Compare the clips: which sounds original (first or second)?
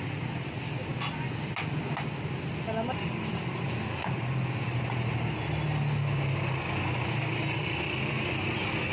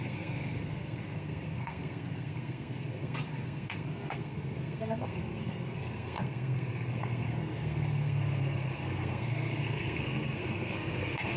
first